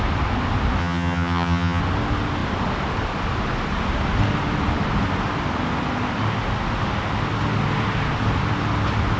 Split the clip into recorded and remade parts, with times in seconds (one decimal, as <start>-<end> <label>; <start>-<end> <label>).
0.0-0.8 recorded; 0.8-1.8 remade; 1.8-9.2 recorded